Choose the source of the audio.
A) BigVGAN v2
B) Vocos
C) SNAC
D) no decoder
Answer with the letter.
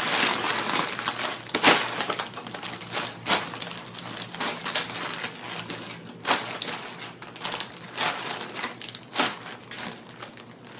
D